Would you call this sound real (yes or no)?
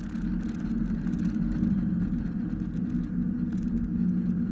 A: yes